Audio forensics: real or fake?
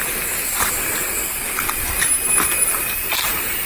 real